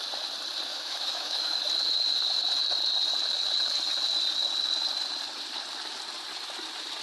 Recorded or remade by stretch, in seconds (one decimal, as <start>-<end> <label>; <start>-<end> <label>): 0.0-0.7 recorded; 0.7-1.6 remade; 1.6-7.0 recorded